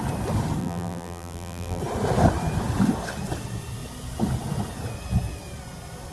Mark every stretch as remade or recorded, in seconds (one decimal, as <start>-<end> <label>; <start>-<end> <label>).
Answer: 0.0-0.6 recorded; 0.6-1.8 remade; 1.8-6.1 recorded